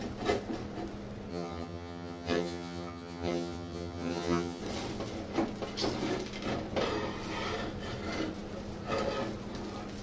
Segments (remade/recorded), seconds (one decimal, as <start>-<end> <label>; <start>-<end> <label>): 0.0-1.3 recorded; 1.3-4.6 remade; 4.6-10.0 recorded